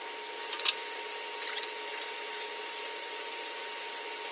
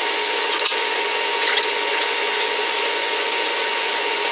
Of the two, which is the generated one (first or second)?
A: second